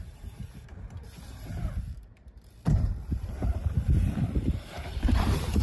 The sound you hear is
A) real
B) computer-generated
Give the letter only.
B